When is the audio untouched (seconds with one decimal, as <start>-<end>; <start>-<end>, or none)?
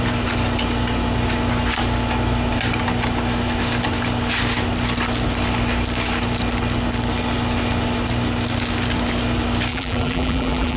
0.0-9.7